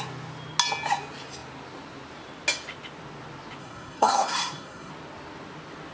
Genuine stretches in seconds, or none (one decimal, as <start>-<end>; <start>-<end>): 0.0-3.6; 4.9-5.9